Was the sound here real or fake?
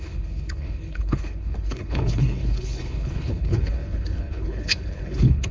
fake